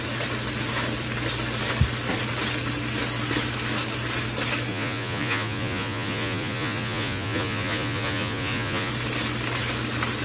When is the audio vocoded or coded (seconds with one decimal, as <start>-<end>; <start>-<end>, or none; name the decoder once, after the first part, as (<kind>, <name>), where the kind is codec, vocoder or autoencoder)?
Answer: 4.7-8.9 (vocoder, Vocos)